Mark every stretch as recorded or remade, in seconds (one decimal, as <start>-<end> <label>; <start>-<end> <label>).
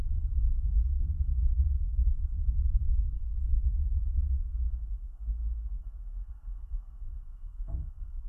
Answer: 0.0-1.3 recorded; 1.3-2.1 remade; 2.1-3.5 recorded; 3.5-8.3 remade